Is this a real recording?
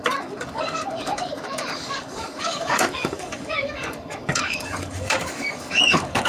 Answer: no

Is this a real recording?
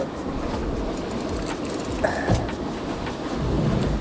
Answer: yes